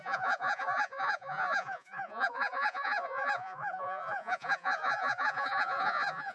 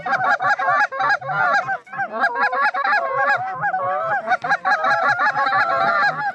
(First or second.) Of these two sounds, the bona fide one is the second